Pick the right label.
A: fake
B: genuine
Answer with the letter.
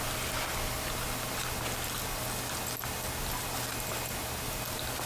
B